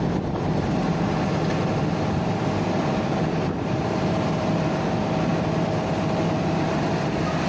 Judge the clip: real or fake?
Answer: fake